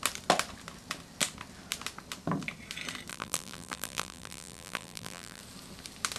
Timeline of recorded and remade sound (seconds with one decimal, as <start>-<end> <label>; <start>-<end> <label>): 0.0-3.1 recorded; 3.1-5.4 remade; 5.4-6.2 recorded